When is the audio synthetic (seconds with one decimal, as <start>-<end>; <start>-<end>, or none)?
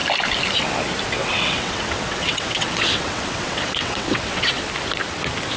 1.2-4.6